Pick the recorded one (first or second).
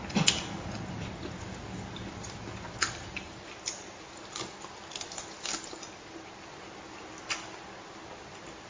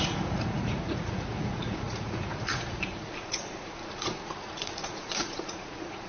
first